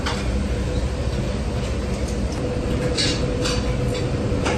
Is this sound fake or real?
real